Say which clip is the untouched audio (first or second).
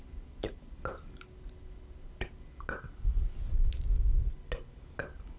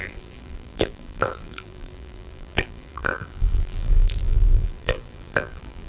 first